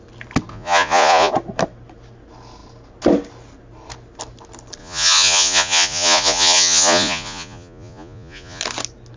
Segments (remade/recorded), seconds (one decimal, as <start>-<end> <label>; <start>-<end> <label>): 0.0-0.5 recorded; 0.5-1.3 remade; 1.3-4.8 recorded; 4.8-8.6 remade; 8.6-9.2 recorded